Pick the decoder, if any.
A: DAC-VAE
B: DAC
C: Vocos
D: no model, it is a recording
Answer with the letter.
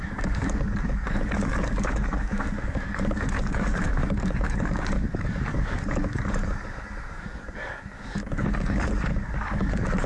B